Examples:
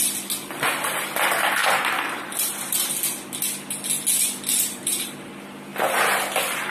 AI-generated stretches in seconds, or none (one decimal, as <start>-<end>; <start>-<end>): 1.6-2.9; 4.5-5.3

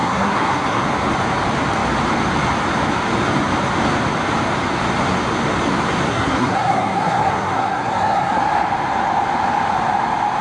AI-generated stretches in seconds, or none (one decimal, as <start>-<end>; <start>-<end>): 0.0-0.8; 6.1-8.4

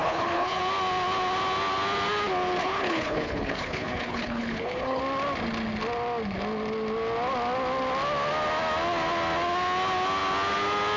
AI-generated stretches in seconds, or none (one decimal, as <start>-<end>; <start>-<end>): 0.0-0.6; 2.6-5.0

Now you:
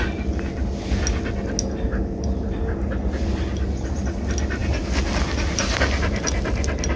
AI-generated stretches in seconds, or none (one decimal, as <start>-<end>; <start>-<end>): none

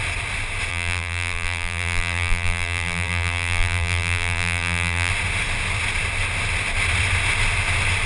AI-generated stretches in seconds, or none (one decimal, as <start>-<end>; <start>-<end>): 0.7-5.1

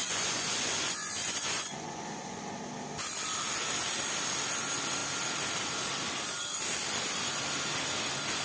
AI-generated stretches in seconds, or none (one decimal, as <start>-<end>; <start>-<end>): 0.0-2.4